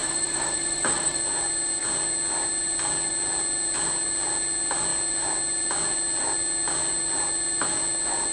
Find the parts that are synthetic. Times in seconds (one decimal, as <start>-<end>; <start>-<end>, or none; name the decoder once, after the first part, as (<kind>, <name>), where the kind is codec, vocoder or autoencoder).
0.0-1.2 (vocoder, BigVGAN v2)

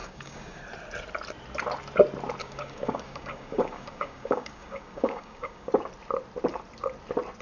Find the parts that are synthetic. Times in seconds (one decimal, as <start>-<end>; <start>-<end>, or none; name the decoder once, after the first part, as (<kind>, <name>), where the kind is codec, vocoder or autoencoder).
0.0-0.6 (codec, DAC); 2.4-5.7

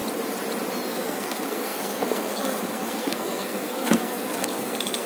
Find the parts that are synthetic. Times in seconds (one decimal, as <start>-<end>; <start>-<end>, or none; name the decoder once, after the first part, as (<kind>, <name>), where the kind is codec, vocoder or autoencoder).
0.9-5.1 (codec, SNAC)

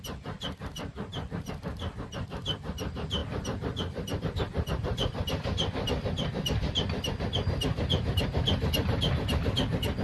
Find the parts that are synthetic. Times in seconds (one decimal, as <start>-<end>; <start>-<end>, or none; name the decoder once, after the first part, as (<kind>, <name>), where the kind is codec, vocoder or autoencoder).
0.9-1.5 (vocoder, BigVGAN v2)

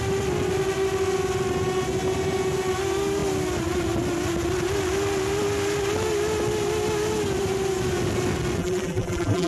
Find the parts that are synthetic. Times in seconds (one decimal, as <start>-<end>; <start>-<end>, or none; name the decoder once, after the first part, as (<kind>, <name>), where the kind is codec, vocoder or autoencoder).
8.6-9.5 (vocoder, BigVGAN v2)

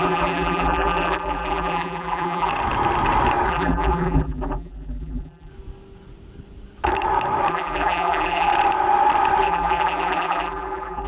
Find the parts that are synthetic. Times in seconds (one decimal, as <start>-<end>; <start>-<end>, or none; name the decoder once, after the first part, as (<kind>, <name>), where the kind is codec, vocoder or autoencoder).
0.0-2.5 (vocoder, BigVGAN v2); 3.5-5.5; 7.5-8.5; 9.4-11.1

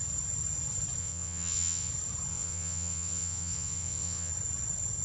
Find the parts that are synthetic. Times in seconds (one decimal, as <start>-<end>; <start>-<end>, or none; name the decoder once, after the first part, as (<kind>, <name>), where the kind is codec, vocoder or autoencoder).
1.0-1.9 (vocoder, WaveNeXt); 2.3-4.3

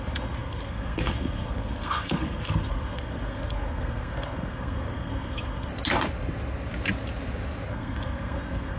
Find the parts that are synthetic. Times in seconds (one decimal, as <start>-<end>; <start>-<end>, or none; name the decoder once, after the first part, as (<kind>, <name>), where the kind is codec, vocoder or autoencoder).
0.0-5.7 (codec, SNAC); 7.7-8.8